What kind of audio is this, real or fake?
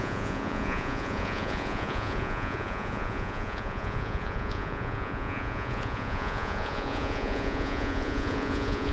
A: fake